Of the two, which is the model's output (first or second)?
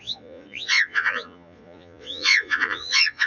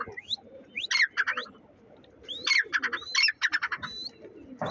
first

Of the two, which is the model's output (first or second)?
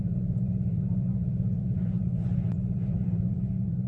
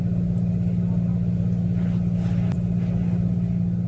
first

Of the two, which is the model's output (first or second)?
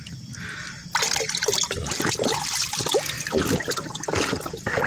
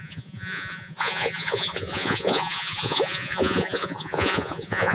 second